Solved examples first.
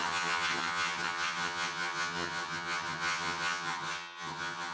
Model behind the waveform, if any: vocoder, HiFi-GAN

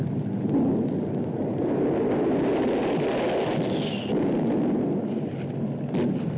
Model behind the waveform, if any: none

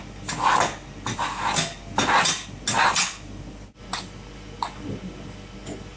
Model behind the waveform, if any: none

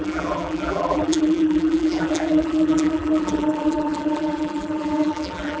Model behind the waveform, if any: vocoder, BigVGAN v2